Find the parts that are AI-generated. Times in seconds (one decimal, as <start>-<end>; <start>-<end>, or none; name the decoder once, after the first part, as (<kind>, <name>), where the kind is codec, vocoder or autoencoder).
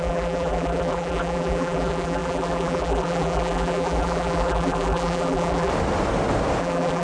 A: 0.0-5.7 (vocoder, BigVGAN v2); 6.6-7.0